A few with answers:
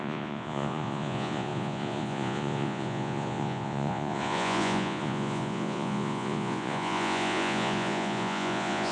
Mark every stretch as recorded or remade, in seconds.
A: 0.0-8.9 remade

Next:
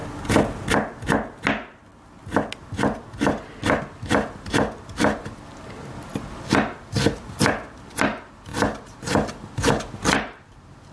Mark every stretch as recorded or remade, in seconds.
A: 0.0-10.9 recorded

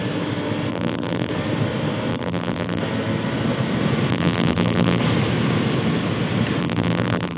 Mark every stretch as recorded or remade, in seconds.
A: 0.0-0.7 recorded; 0.7-1.3 remade; 1.3-2.1 recorded; 2.1-2.8 remade; 2.8-4.1 recorded; 4.1-5.0 remade; 5.0-6.6 recorded; 6.6-7.4 remade

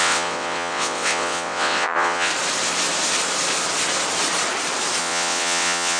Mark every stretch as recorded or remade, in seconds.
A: 0.0-2.3 remade; 2.3-5.0 recorded; 5.0-6.0 remade